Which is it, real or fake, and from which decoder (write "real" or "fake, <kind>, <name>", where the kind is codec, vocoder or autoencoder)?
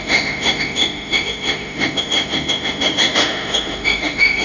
fake, autoencoder, DAC-VAE